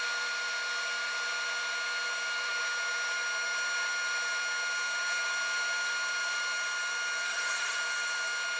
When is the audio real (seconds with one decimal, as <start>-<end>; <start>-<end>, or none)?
0.0-7.3; 7.8-8.6